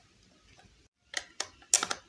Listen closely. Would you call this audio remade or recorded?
recorded